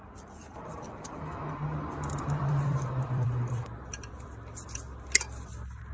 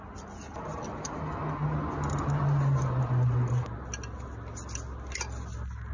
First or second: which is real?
second